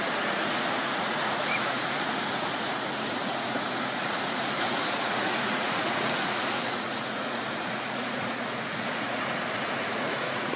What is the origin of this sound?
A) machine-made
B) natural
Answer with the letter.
A